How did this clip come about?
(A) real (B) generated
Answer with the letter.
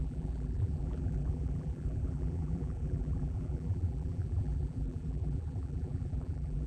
B